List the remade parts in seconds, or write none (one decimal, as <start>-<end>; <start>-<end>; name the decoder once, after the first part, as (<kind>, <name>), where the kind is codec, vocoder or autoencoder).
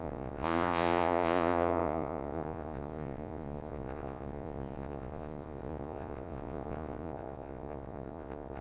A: 0.0-8.6 (vocoder, Vocos)